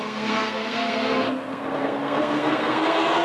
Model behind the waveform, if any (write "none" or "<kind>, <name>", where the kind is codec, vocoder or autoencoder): codec, SNAC